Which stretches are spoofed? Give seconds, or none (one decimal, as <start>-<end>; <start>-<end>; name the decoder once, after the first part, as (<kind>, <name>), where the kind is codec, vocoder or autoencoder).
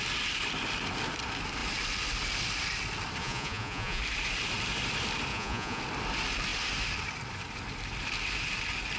3.2-4.0 (vocoder, Vocos); 5.3-5.8